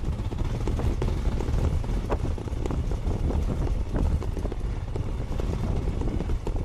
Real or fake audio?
real